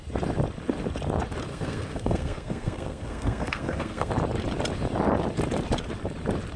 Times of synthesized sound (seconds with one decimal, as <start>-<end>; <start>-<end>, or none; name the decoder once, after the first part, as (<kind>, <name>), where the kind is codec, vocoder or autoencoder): 1.5-4.1 (codec, SNAC)